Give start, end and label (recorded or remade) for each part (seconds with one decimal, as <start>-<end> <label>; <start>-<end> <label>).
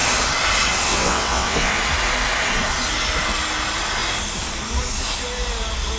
0.0-0.9 recorded; 0.9-1.8 remade; 1.8-6.0 recorded